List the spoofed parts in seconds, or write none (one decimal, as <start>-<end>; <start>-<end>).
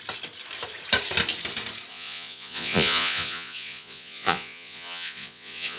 1.9-5.8